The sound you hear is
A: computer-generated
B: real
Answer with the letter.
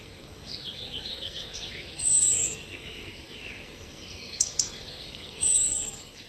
A